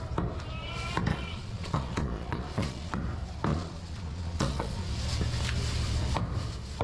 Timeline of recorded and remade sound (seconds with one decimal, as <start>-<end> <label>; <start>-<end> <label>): 0.0-1.1 recorded; 1.1-3.0 remade; 3.0-3.5 recorded; 3.5-4.9 remade; 4.9-6.8 recorded